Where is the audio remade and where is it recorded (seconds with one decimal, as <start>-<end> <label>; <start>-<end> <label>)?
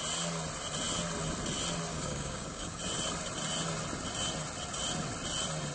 0.0-1.9 recorded; 1.9-2.8 remade; 2.8-5.7 recorded